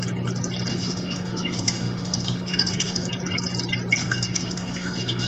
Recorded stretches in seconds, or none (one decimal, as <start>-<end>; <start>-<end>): 0.0-0.7; 3.1-4.0